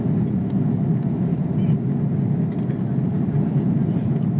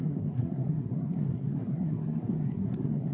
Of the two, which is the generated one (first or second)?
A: second